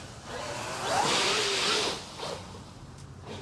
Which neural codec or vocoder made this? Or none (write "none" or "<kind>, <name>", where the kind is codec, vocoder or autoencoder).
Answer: none